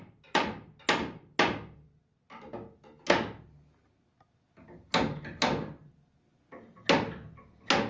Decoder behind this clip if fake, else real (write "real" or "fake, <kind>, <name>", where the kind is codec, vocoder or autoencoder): real